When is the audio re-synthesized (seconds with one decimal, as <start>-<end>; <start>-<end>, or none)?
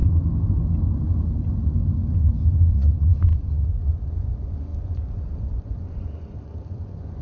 2.7-7.2